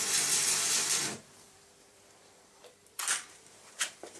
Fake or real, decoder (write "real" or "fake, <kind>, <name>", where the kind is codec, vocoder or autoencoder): fake, vocoder, BigVGAN v2